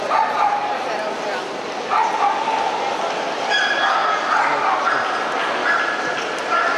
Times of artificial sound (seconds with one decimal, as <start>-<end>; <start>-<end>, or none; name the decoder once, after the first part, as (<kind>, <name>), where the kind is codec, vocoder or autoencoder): none